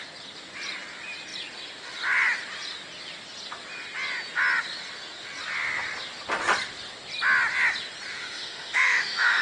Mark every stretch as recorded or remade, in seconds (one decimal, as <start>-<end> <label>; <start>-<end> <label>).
0.0-8.1 recorded; 8.1-9.4 remade